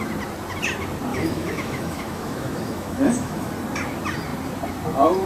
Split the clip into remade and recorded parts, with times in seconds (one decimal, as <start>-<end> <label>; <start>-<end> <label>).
0.0-1.1 recorded; 1.1-3.5 remade; 3.5-5.3 recorded